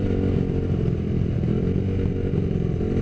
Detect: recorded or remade recorded